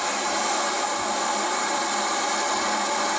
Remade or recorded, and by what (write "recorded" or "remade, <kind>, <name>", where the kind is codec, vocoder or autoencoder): recorded